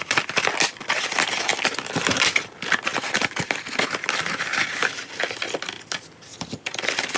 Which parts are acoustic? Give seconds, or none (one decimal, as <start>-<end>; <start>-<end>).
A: 0.0-6.3